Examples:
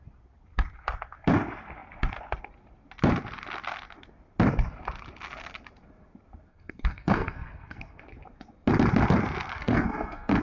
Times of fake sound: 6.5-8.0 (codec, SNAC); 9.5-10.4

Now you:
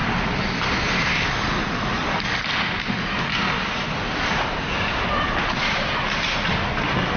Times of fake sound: 4.3-7.2 (vocoder, BigVGAN v2)